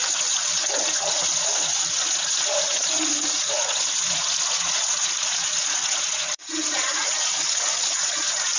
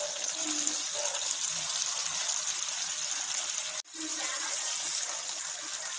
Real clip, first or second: second